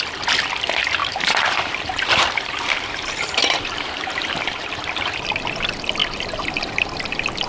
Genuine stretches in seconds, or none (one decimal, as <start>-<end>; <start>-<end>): 0.0-1.0; 4.4-7.5